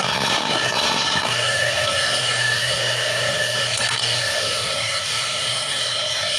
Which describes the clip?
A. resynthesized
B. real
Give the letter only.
A